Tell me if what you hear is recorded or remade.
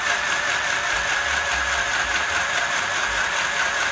recorded